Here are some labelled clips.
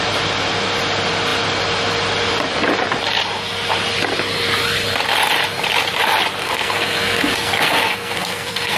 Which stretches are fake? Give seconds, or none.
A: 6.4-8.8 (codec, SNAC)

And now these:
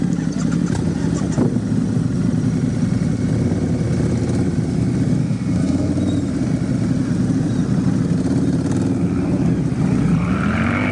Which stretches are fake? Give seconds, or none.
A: 5.2-5.9 (codec, SNAC)

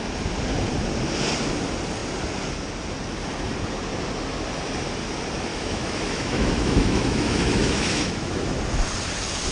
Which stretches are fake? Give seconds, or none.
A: 5.5-8.6 (autoencoder, DAC-VAE)

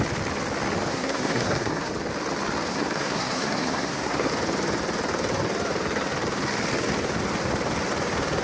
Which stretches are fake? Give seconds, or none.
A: 0.9-1.9 (codec, SNAC); 2.7-4.3

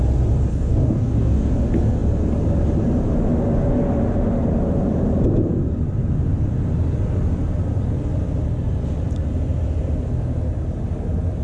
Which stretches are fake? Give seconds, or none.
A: 0.5-1.5 (codec, DAC)

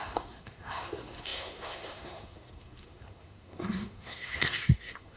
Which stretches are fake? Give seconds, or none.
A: 0.0-5.2 (codec, SNAC)